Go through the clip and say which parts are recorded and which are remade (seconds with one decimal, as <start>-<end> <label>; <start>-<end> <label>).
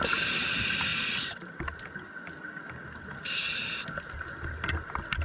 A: 0.0-5.2 recorded